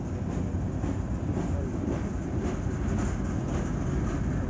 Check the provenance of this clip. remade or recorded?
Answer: recorded